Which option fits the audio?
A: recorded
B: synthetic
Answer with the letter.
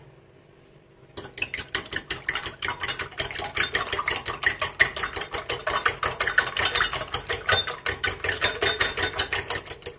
A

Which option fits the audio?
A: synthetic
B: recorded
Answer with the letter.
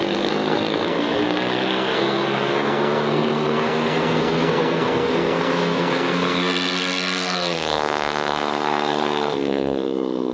A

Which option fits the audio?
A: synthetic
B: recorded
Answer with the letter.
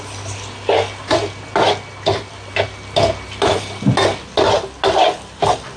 B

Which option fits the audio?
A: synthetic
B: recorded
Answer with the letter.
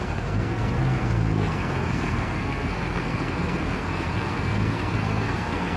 A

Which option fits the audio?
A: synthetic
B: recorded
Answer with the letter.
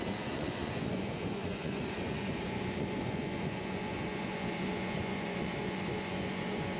A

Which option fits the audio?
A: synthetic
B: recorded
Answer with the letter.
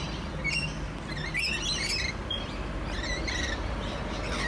B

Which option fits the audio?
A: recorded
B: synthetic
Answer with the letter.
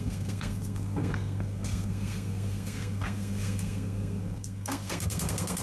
B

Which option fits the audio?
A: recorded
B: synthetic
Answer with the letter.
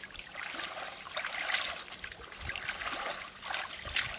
A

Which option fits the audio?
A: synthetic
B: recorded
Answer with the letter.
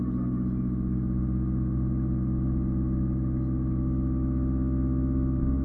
B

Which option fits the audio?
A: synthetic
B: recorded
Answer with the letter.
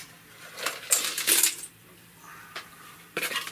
A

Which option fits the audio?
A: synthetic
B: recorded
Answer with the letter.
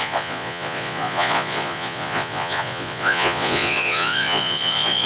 A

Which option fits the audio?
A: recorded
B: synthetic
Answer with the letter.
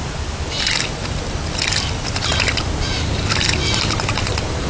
B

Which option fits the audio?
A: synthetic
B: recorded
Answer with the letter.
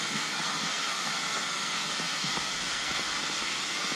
A